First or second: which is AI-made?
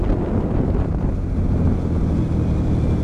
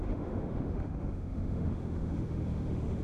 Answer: second